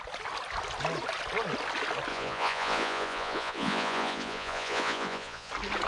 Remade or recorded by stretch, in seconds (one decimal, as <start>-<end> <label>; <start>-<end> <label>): 0.0-2.1 recorded; 2.1-5.5 remade; 5.5-5.9 recorded